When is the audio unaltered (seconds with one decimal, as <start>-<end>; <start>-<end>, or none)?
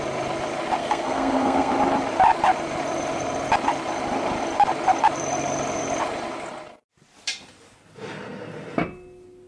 0.0-0.8; 1.7-9.5